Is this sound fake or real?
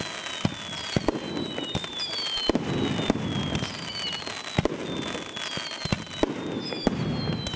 real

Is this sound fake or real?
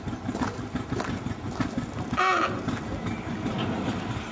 real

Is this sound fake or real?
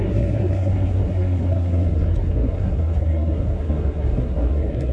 fake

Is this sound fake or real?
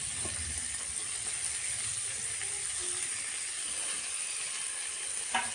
real